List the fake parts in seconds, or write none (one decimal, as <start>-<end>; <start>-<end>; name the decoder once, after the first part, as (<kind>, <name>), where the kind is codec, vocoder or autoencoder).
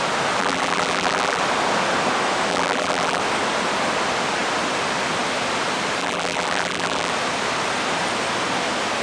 0.4-1.4 (vocoder, BigVGAN v2); 2.5-3.2; 6.0-7.1